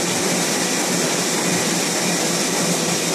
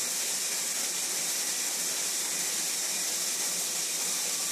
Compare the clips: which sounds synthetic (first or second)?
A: second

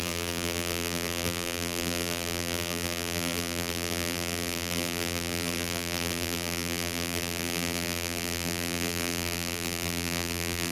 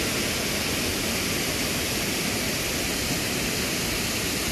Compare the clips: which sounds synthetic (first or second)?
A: first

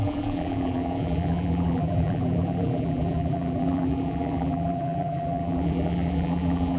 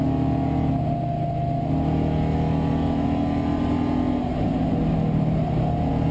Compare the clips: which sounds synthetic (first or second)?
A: first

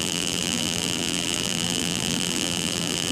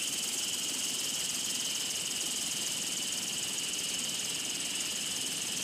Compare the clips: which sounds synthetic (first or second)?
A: first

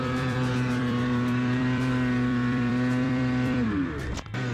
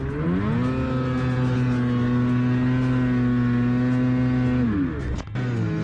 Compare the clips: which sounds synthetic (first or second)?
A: first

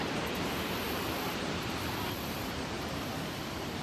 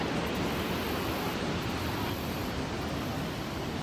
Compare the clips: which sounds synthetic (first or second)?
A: first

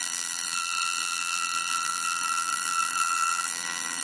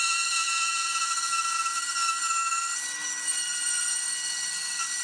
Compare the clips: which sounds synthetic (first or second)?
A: first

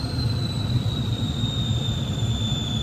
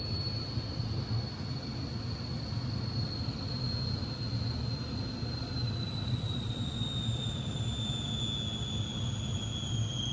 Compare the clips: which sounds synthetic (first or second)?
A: first